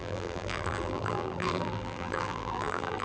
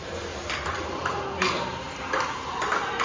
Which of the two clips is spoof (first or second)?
first